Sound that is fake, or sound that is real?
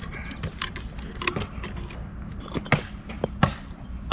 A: real